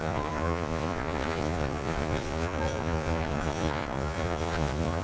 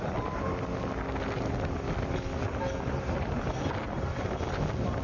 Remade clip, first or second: first